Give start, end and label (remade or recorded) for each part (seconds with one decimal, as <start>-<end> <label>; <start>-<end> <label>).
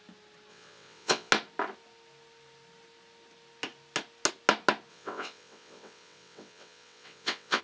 0.0-0.5 recorded; 0.5-1.3 remade; 1.3-4.9 recorded; 4.9-7.6 remade